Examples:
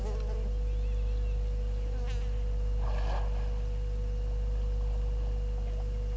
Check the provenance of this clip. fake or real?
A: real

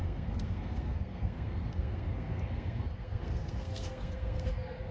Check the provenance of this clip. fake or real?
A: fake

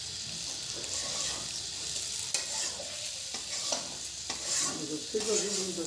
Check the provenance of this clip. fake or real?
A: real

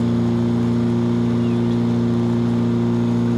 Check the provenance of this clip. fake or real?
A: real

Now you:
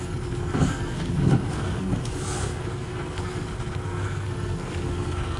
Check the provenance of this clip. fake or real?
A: fake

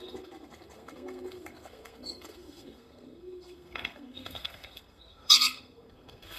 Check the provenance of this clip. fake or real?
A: fake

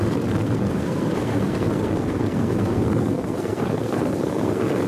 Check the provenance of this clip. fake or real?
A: fake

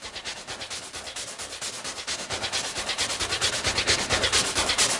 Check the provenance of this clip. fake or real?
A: real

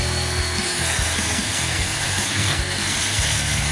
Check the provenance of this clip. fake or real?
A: fake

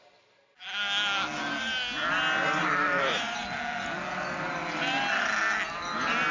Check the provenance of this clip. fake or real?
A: real